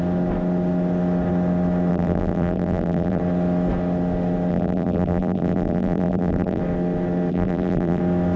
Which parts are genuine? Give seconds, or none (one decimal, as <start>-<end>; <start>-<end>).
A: 0.0-1.9; 3.2-4.5; 6.6-7.3; 8.0-8.4

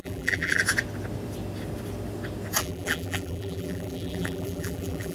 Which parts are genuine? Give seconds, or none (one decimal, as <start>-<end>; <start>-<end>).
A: 0.6-2.6

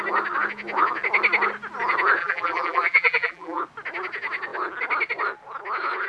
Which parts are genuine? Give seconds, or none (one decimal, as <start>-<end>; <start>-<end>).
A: 0.0-2.2; 3.6-6.1

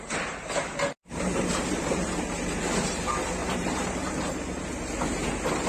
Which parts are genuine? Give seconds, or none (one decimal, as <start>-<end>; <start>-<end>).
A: 0.0-1.0; 1.9-3.4; 4.1-5.7

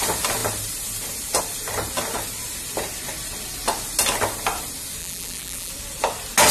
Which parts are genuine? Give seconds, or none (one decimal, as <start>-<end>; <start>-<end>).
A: 0.0-5.0; 5.7-6.5

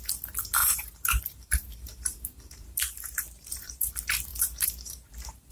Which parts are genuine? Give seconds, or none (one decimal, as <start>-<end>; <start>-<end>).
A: 0.0-0.6; 3.9-4.3